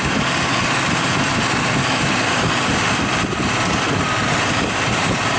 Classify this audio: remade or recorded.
remade